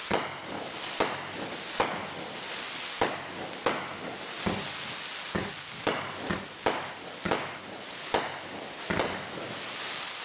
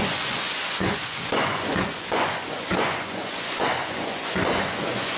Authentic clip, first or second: first